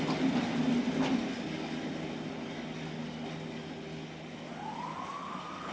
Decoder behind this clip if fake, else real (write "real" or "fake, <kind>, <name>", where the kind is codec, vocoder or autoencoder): real